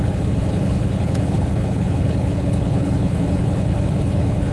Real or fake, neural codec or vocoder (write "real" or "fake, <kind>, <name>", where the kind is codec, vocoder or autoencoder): fake, codec, HILCodec